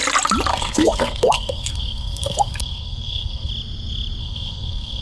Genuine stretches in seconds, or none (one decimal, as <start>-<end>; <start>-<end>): 0.0-0.5; 3.5-4.2

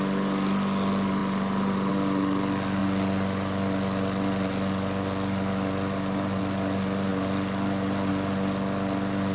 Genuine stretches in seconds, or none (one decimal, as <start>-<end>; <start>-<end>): 0.0-9.3

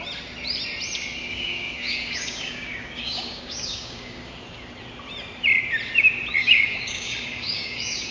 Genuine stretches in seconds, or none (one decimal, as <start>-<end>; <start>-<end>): 0.0-1.3; 4.3-6.4